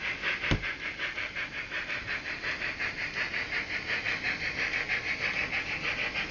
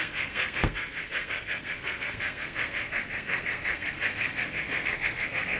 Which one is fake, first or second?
second